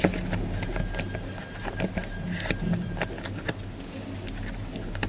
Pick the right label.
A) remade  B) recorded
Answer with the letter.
B